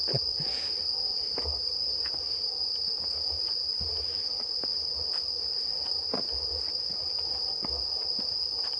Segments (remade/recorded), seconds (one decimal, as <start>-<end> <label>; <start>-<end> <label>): 0.0-8.8 recorded